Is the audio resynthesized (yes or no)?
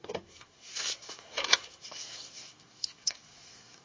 yes